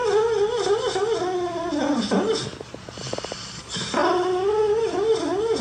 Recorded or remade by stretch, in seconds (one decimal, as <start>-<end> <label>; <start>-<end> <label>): 0.0-2.5 recorded; 2.5-3.0 remade; 3.0-5.6 recorded